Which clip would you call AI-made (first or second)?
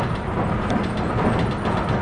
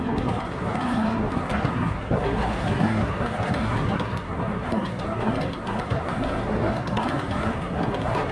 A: second